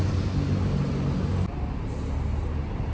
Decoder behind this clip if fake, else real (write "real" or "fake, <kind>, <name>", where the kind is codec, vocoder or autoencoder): real